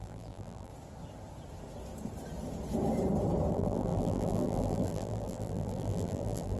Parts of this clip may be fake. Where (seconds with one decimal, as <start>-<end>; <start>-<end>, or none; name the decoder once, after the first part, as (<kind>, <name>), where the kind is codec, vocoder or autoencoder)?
0.0-0.7 (vocoder, BigVGAN v2); 3.5-6.6